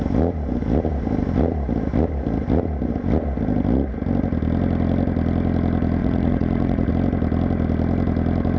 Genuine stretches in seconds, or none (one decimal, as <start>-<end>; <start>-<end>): 0.0-6.0; 6.9-8.6